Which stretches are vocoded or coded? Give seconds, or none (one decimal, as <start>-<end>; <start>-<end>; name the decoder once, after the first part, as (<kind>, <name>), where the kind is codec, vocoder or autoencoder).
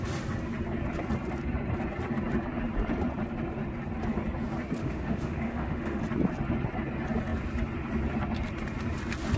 4.8-6.0 (autoencoder, DAC-VAE)